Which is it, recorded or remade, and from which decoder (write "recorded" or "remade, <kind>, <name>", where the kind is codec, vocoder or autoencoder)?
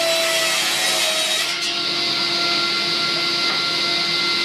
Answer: recorded